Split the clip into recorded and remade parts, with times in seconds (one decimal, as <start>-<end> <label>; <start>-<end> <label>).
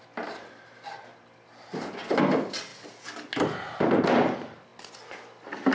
0.0-5.7 recorded